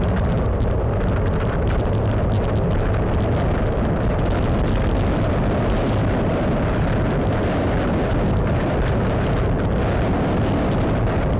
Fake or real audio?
real